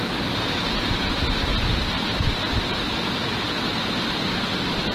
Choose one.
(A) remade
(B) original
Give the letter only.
B